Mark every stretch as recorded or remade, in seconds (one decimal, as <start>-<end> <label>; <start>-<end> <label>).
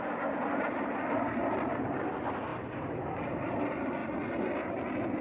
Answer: 0.0-4.0 remade; 4.0-5.2 recorded